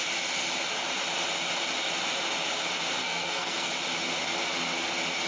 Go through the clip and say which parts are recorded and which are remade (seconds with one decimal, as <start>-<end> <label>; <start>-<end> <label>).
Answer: 0.0-3.0 recorded; 3.0-3.7 remade; 3.7-5.3 recorded